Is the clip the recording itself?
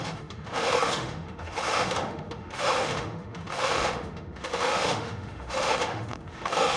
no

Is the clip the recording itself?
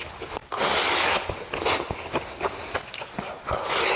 yes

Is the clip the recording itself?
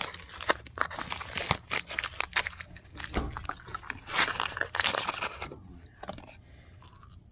yes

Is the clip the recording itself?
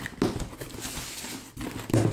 yes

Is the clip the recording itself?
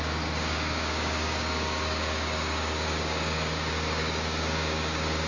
no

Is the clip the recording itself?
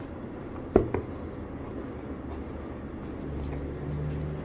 yes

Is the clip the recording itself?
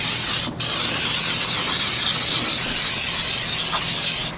yes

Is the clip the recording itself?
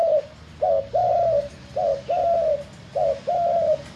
yes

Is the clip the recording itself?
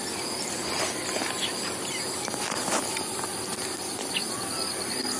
yes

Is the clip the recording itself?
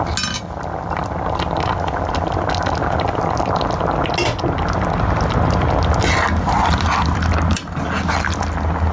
yes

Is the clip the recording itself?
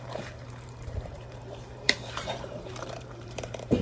no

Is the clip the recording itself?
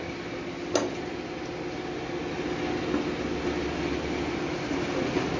yes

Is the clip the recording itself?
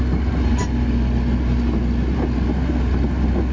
yes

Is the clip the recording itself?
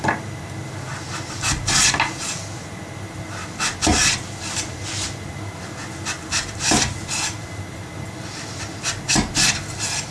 yes